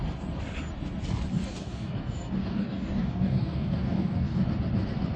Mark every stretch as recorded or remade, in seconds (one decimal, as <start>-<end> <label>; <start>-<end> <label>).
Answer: 0.0-1.3 recorded; 1.3-4.4 remade; 4.4-5.2 recorded